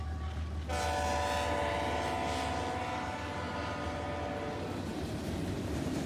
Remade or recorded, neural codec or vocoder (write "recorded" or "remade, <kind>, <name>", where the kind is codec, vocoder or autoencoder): recorded